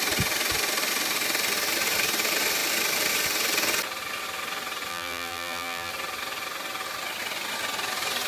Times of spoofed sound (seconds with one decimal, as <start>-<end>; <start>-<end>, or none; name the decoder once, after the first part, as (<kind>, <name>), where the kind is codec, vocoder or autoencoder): 4.9-5.9 (vocoder, BigVGAN v2)